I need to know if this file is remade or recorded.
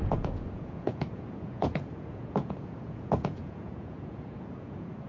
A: remade